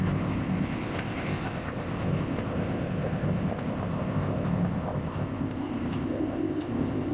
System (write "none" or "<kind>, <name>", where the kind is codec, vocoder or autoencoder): codec, ZipCodec